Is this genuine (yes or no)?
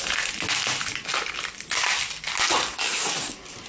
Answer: yes